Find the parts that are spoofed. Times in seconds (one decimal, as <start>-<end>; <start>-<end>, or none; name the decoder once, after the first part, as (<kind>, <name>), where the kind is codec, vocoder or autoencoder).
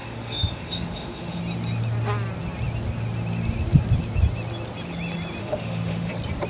0.0-1.4 (autoencoder, DAC-VAE); 5.4-6.1